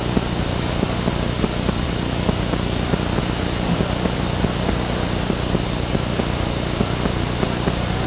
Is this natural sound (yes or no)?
yes